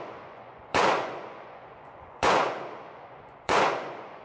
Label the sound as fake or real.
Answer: fake